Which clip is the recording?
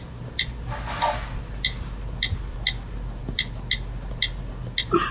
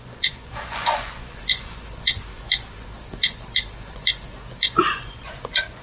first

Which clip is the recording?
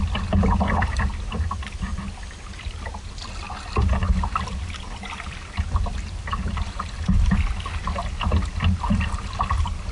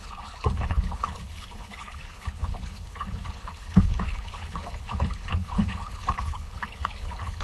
first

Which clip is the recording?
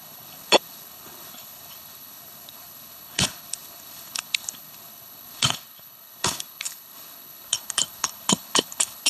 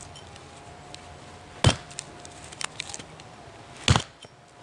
second